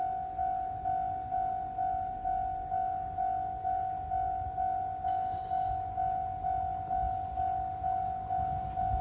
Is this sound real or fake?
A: real